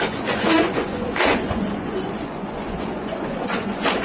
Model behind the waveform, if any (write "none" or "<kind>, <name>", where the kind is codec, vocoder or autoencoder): vocoder, Vocos